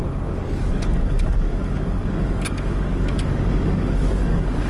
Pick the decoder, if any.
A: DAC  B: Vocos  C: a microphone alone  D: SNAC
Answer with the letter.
A